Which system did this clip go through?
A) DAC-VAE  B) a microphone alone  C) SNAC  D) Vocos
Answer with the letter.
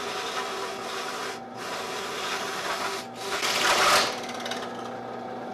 B